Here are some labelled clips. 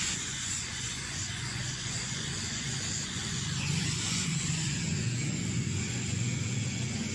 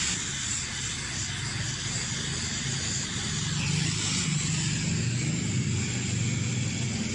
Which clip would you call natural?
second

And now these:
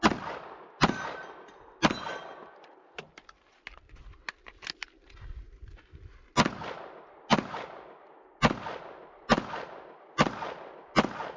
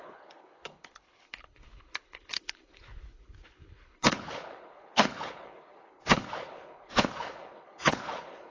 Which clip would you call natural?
first